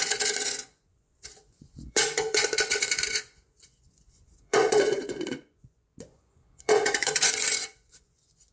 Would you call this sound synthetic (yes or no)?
yes